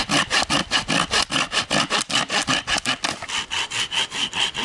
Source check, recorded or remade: recorded